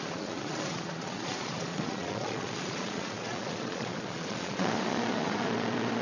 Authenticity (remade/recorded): remade